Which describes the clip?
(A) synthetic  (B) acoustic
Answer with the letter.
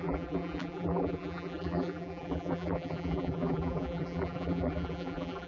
A